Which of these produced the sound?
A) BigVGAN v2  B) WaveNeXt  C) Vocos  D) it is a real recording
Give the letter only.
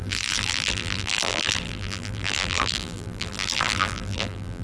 A